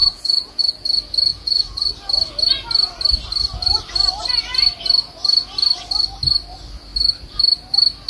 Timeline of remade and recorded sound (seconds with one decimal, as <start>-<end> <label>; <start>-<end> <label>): 0.0-0.6 remade; 0.6-1.3 recorded; 1.3-1.9 remade; 1.9-8.1 recorded